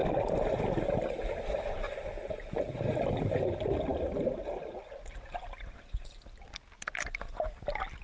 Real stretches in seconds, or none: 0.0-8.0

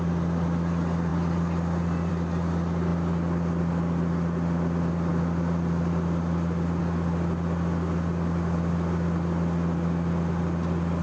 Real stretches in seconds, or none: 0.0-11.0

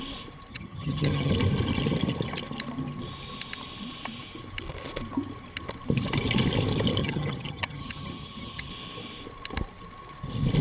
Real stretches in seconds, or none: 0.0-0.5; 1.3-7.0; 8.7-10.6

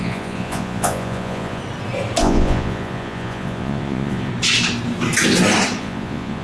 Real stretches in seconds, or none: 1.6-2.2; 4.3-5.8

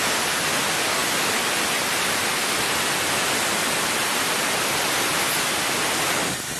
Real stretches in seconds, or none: 0.0-6.6